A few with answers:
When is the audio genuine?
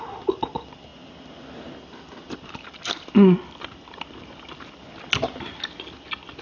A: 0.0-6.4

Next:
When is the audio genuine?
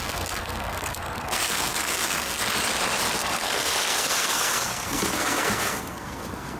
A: 2.4-3.2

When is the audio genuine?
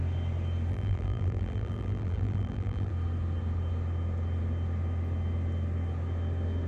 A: 0.0-0.7; 2.9-6.7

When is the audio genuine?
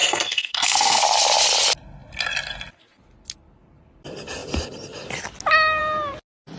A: 1.0-6.6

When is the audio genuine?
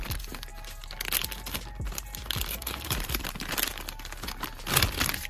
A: 0.5-2.4; 3.7-4.4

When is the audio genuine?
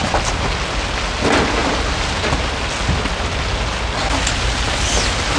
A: 0.0-5.4